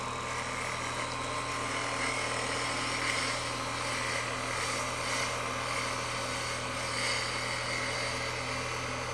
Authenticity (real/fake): real